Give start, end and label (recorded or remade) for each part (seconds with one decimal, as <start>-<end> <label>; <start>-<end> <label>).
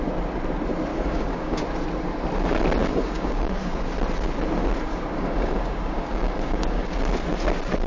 0.0-0.9 recorded; 0.9-1.6 remade; 1.6-2.8 recorded; 2.8-3.9 remade; 3.9-4.9 recorded; 4.9-7.0 remade; 7.0-7.9 recorded